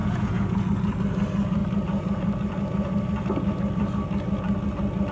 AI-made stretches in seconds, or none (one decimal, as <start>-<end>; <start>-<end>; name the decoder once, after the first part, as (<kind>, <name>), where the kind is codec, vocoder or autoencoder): 0.0-0.6 (vocoder, Vocos)